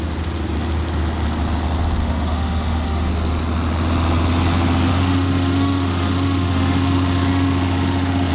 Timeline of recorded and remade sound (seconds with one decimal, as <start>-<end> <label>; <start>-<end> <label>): 0.0-2.0 recorded; 2.0-3.1 remade; 3.1-4.9 recorded; 4.9-8.3 remade

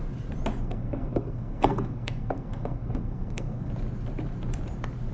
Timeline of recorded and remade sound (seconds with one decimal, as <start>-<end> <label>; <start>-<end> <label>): 0.0-0.6 recorded; 0.6-3.7 remade; 3.7-5.1 recorded

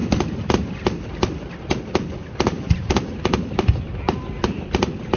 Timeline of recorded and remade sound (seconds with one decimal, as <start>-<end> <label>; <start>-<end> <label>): 0.0-5.2 remade

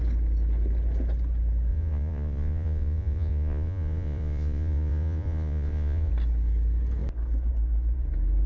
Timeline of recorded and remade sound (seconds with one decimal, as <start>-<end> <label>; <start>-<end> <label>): 0.0-1.7 recorded; 1.7-6.1 remade; 6.1-8.5 recorded

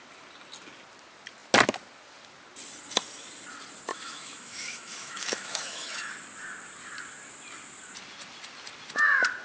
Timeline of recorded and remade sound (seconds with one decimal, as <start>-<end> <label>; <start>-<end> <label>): 0.0-3.9 recorded; 3.9-6.1 remade; 6.1-9.4 recorded